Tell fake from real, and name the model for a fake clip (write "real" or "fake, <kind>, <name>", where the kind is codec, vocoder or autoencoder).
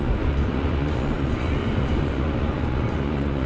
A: fake, vocoder, Vocos